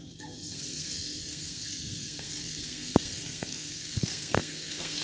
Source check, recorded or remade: remade